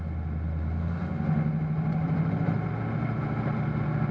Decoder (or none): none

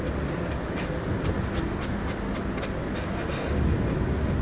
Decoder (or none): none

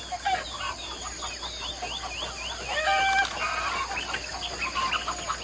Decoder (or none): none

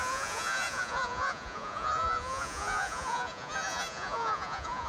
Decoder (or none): vocoder, Vocos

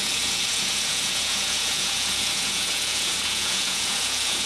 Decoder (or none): vocoder, Vocos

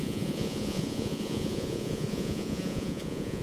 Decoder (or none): vocoder, Vocos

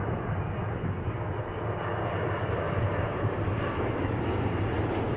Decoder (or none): none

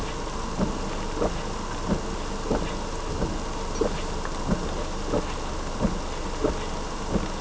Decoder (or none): none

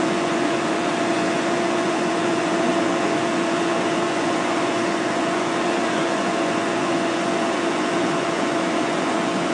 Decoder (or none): vocoder, Vocos